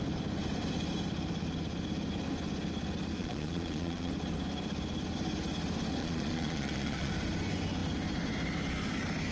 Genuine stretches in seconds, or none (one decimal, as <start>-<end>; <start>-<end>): 0.0-3.2; 4.1-6.0; 7.1-9.3